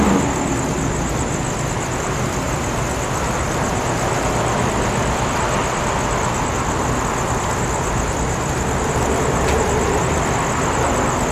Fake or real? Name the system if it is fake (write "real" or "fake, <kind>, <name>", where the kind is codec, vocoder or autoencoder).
real